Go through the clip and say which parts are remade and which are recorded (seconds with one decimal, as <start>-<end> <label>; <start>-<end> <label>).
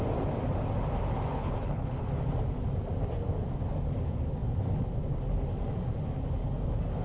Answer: 0.0-1.3 recorded; 1.3-2.1 remade; 2.1-7.0 recorded